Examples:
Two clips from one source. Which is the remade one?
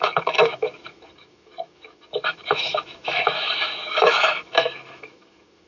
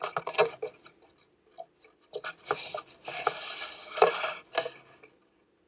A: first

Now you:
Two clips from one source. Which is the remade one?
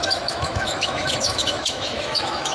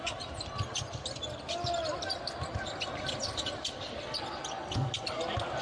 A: first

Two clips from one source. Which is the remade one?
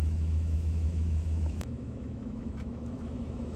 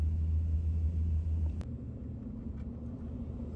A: first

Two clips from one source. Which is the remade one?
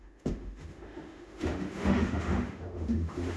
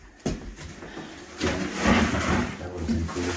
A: first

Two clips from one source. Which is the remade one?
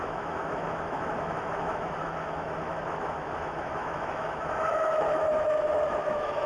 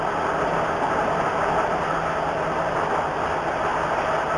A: first